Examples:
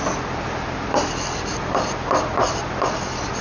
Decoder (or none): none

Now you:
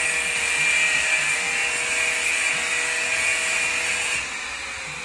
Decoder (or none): none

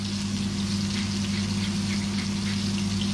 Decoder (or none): none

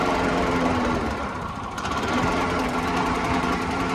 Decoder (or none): vocoder, BigVGAN v2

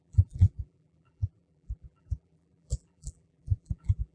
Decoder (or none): vocoder, BigVGAN v2